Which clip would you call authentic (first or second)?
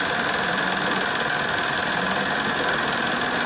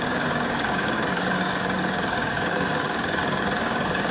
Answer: first